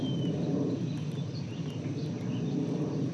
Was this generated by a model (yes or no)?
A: no